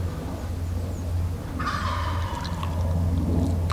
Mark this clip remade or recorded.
recorded